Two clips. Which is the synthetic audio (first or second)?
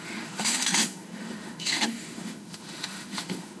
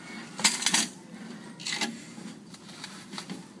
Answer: first